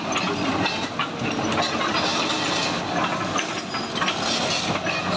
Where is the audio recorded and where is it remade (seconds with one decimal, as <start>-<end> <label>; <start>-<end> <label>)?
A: 0.0-5.2 recorded